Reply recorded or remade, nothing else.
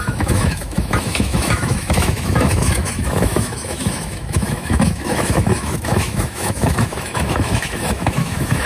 remade